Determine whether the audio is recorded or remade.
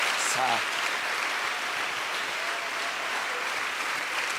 recorded